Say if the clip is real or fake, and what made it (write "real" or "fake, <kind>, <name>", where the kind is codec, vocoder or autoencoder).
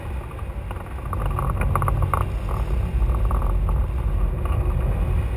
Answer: real